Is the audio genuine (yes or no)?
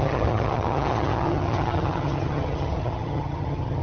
no